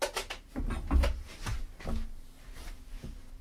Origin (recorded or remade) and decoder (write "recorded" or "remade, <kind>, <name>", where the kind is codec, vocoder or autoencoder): recorded